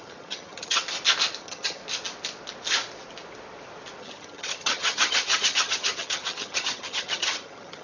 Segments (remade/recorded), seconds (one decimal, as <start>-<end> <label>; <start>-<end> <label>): 0.0-0.8 remade; 0.8-1.4 recorded; 1.4-1.8 remade; 1.8-4.0 recorded; 4.0-7.8 remade